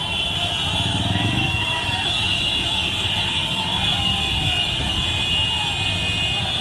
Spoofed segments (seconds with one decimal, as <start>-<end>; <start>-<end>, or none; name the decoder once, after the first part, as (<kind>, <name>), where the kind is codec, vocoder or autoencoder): 0.9-4.9 (codec, DAC)